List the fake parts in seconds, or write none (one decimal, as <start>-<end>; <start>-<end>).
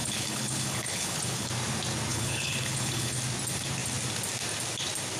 0.0-1.5; 2.1-3.2